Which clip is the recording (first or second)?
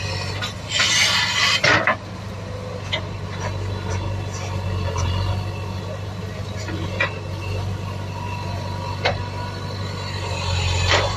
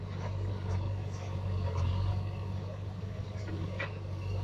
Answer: first